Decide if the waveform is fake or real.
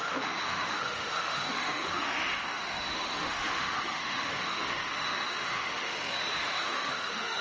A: fake